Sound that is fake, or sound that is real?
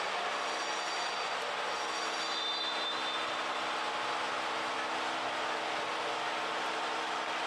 real